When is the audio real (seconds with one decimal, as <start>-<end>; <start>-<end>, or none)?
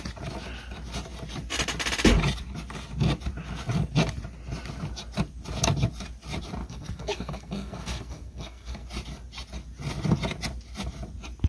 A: 0.0-6.6; 8.9-11.5